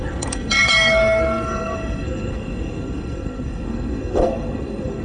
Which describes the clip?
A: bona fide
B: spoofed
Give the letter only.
B